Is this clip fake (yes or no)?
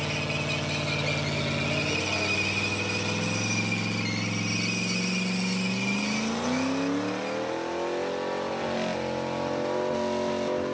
no